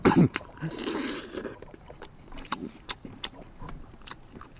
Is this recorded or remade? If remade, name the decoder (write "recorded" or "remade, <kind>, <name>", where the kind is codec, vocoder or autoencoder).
remade, vocoder, BigVGAN v2